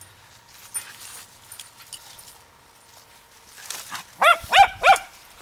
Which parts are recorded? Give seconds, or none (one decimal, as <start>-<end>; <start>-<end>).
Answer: 0.0-4.3